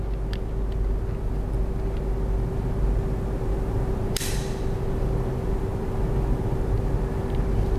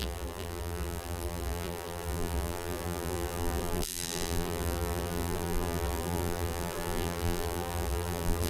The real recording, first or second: first